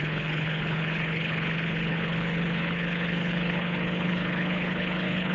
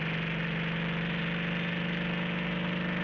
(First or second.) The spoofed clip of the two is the first